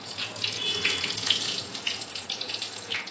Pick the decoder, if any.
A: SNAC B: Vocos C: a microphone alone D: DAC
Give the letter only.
B